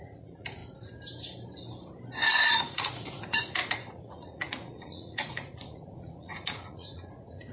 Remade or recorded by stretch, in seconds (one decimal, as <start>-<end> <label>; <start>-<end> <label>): 0.0-0.6 remade; 0.6-2.5 recorded; 2.5-7.5 remade